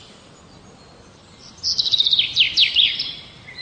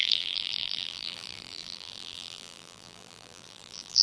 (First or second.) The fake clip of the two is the second